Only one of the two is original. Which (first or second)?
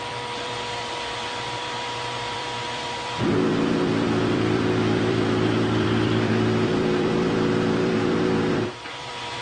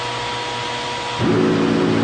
second